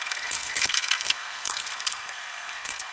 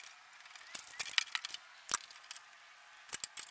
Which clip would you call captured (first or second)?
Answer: second